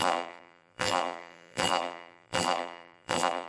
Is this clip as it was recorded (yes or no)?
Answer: no